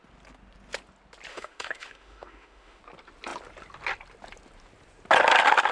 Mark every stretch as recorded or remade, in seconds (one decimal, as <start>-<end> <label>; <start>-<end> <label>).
0.0-1.3 recorded; 1.3-2.8 remade; 2.8-5.7 recorded